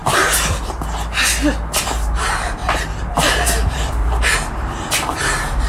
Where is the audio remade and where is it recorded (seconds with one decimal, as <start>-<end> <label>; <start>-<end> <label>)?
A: 0.0-1.8 recorded; 1.8-2.6 remade; 2.6-3.1 recorded; 3.1-5.7 remade